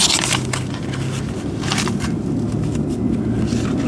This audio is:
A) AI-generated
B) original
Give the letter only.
B